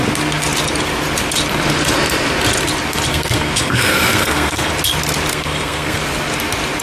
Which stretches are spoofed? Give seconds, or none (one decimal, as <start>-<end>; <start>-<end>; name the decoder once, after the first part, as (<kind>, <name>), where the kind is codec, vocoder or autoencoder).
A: 3.1-4.7 (codec, SNAC); 5.3-6.0

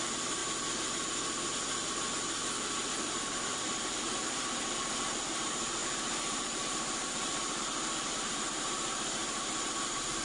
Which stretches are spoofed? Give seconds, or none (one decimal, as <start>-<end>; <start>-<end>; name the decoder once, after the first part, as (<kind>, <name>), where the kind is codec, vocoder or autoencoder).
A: 0.0-0.4 (vocoder, BigVGAN v2); 3.0-10.2

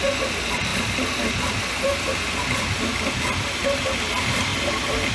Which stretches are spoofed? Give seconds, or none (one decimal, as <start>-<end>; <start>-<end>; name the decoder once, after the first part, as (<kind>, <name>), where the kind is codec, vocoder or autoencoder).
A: 0.7-3.8 (vocoder, BigVGAN v2); 4.5-5.1